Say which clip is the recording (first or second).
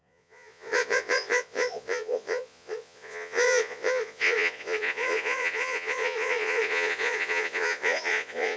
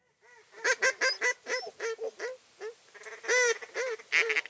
second